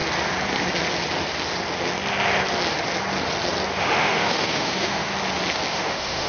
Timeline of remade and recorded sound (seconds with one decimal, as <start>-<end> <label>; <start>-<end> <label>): 0.0-3.8 recorded; 3.8-5.1 remade; 5.1-5.7 recorded; 5.7-6.3 remade